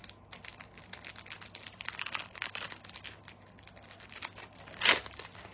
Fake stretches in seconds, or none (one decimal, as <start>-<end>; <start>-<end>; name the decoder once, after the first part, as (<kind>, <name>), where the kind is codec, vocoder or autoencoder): none